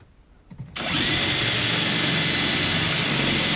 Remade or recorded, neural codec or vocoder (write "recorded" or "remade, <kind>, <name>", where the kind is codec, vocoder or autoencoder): recorded